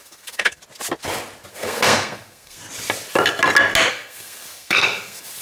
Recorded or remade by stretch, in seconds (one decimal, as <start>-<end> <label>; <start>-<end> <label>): 0.0-0.6 remade; 0.6-1.5 recorded; 1.5-2.6 remade; 2.6-3.9 recorded; 3.9-5.4 remade